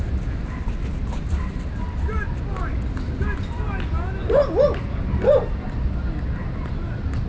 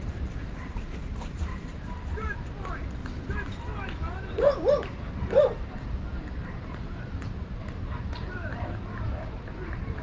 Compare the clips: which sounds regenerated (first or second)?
second